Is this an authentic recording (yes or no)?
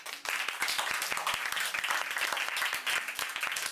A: yes